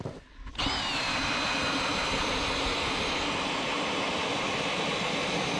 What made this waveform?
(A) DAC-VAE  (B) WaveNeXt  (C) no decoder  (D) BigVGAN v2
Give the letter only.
D